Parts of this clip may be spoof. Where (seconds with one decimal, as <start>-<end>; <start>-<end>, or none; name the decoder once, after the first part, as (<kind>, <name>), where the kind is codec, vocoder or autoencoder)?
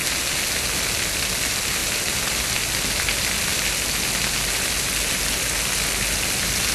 none